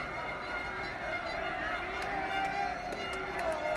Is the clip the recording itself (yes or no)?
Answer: yes